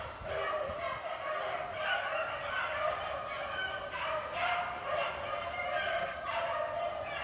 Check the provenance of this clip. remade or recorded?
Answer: recorded